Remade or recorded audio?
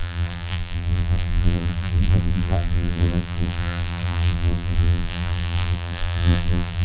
remade